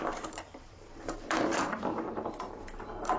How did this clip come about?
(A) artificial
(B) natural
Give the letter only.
A